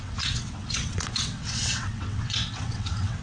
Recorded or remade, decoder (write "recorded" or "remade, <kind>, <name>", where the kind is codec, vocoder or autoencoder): remade, vocoder, WaveNeXt